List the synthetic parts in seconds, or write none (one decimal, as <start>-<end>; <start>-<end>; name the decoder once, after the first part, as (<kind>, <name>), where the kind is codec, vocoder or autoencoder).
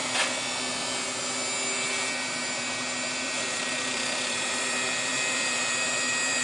1.7-6.4 (vocoder, BigVGAN v2)